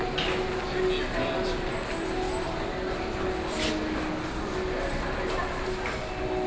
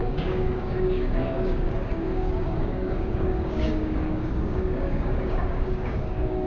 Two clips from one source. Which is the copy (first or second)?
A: second